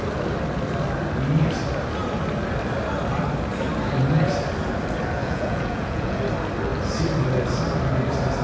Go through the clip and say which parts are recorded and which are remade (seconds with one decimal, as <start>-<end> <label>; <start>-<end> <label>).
0.0-5.2 recorded; 5.2-6.2 remade; 6.2-8.4 recorded